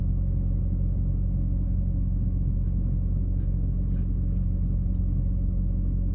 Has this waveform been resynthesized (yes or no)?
no